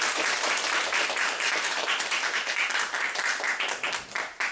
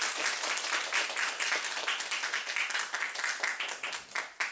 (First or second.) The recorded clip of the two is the second